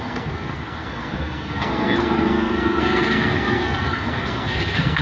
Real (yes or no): no